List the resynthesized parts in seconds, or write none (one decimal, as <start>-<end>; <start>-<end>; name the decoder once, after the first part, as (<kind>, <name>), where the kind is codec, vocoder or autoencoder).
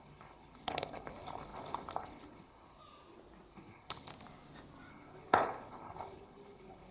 0.0-2.8 (codec, HILCodec); 3.5-4.1; 4.9-6.9